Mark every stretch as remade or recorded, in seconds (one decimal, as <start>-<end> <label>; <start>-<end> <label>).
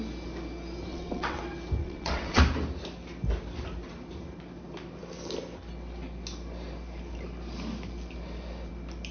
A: 0.0-0.9 recorded; 0.9-1.4 remade; 1.4-1.8 recorded; 1.8-2.4 remade; 2.4-9.1 recorded